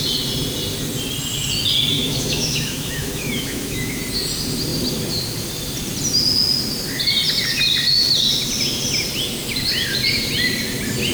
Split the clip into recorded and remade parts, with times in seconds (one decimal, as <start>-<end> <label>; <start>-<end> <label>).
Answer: 0.0-1.9 recorded; 1.9-4.0 remade; 4.0-11.1 recorded